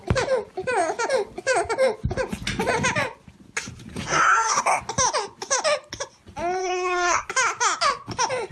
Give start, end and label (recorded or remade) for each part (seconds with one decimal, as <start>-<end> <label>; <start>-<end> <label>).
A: 0.0-3.9 recorded; 3.9-4.8 remade; 4.8-6.6 recorded; 6.6-7.3 remade; 7.3-8.5 recorded